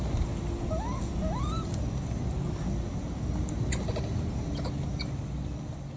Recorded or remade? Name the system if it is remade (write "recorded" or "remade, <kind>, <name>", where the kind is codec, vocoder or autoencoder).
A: recorded